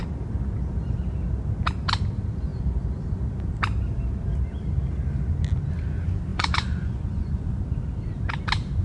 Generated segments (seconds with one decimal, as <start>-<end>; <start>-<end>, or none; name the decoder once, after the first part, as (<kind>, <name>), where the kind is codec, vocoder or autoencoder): 6.3-7.6 (vocoder, Vocos)